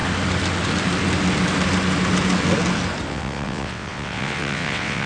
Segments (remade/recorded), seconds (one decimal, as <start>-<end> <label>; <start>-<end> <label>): 0.0-3.1 recorded; 3.1-5.1 remade